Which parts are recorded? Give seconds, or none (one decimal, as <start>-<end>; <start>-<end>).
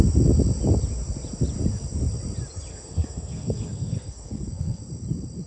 0.0-2.7; 4.8-5.5